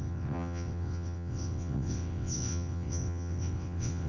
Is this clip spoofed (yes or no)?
yes